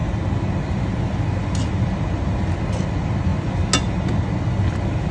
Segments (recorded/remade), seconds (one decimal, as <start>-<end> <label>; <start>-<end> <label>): 0.0-5.1 recorded